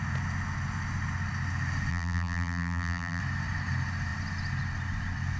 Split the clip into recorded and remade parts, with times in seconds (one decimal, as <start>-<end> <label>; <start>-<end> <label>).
0.0-1.9 recorded; 1.9-3.2 remade; 3.2-5.4 recorded

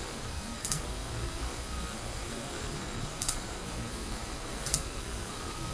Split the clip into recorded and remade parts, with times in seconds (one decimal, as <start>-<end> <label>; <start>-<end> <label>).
0.0-5.7 remade

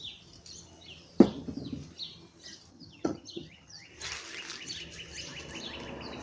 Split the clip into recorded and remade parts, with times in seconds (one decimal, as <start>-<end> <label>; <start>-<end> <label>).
0.0-2.7 recorded; 2.7-3.9 remade; 3.9-6.2 recorded

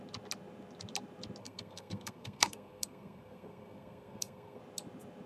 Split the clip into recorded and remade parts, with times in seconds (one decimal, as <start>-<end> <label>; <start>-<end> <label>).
0.0-1.4 recorded; 1.4-4.6 remade; 4.6-5.3 recorded

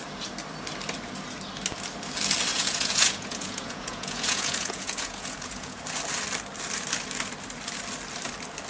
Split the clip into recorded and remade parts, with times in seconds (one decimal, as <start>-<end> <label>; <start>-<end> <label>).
0.0-2.5 recorded; 2.5-5.8 remade; 5.8-8.7 recorded

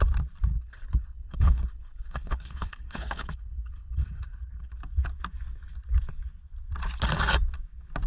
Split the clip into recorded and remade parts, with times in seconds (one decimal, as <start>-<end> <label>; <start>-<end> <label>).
0.0-0.5 recorded; 0.5-4.8 remade; 4.8-8.1 recorded

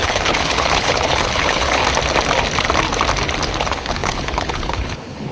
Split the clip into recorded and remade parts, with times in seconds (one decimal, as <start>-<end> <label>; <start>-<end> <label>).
0.0-1.8 remade; 1.8-3.6 recorded; 3.6-5.3 remade

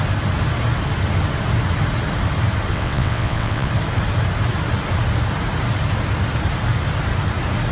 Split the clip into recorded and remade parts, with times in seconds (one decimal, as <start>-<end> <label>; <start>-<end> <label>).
0.0-2.7 recorded; 2.7-3.7 remade; 3.7-7.7 recorded